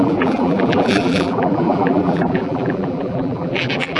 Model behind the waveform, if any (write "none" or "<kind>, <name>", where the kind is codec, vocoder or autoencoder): vocoder, BigVGAN v2